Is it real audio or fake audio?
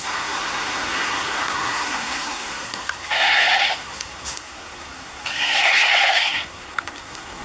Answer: fake